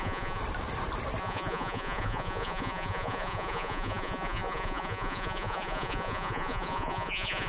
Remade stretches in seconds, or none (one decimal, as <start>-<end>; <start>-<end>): 0.0-0.4; 1.2-7.5